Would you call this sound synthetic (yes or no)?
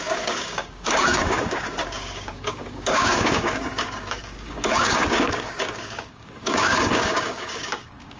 yes